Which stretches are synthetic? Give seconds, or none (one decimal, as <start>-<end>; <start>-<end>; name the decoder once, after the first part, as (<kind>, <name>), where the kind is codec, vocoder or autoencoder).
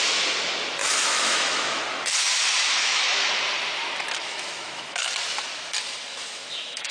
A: 0.8-1.8 (autoencoder, DAC-VAE); 2.8-3.3; 4.2-5.1; 6.1-6.9